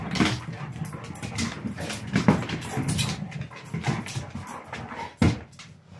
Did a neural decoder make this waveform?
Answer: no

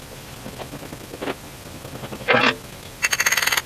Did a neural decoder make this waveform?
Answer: yes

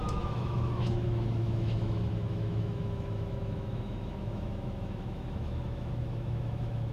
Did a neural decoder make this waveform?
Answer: yes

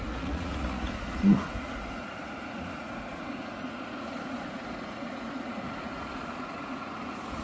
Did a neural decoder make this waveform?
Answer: yes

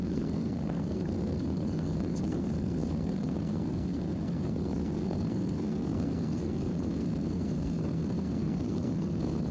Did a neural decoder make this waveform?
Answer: yes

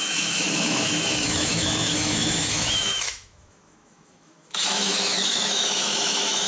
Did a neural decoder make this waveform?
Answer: yes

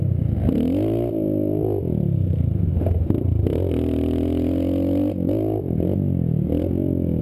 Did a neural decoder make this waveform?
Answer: no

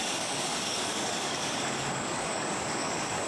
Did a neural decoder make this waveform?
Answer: yes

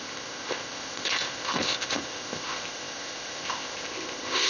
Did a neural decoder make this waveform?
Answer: yes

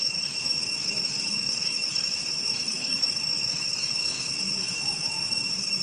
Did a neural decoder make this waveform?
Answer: yes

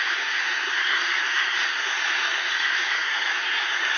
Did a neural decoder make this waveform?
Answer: yes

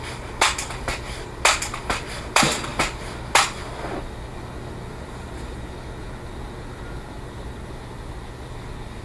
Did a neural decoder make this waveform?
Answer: no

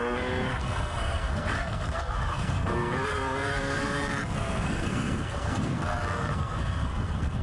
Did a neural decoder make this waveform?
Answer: yes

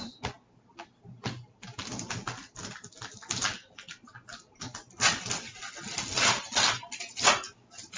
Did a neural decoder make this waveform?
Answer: no